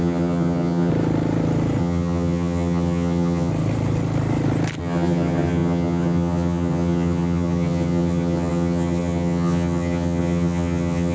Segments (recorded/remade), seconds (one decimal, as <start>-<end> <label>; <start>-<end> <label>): 0.0-0.9 remade; 0.9-1.8 recorded; 1.8-3.5 remade; 3.5-4.8 recorded; 4.8-11.1 remade